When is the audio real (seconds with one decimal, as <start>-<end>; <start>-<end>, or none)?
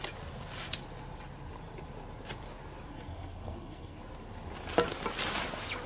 0.0-2.9; 4.0-5.9